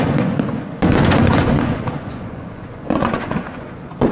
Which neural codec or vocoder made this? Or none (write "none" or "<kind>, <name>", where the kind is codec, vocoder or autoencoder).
vocoder, Vocos